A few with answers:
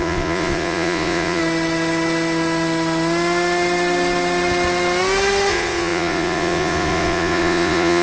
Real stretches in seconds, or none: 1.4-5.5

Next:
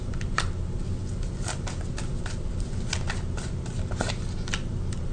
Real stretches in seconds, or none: 0.0-5.1